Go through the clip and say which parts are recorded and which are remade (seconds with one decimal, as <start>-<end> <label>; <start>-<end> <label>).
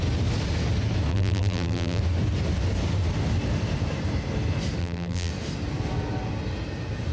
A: 0.0-1.1 recorded; 1.1-2.0 remade; 2.0-4.8 recorded; 4.8-5.3 remade; 5.3-7.1 recorded